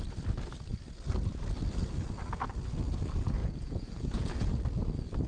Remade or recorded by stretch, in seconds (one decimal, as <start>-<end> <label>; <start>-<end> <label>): 0.0-3.4 recorded; 3.4-4.6 remade; 4.6-5.3 recorded